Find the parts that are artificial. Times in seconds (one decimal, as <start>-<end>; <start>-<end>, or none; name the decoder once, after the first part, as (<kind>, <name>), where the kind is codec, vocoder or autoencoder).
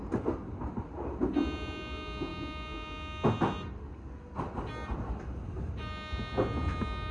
none